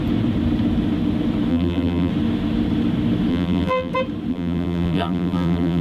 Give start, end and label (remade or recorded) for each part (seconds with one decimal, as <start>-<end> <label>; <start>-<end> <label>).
0.0-1.5 recorded; 1.5-2.1 remade; 2.1-3.3 recorded; 3.3-3.9 remade; 3.9-4.3 recorded; 4.3-5.8 remade